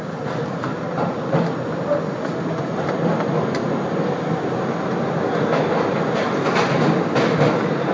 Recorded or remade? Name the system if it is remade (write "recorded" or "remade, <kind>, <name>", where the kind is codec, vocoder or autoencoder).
recorded